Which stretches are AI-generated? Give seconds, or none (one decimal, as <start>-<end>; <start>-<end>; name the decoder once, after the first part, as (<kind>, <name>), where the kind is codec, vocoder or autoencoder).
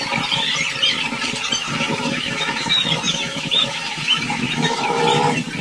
1.6-5.0 (autoencoder, DAC-VAE)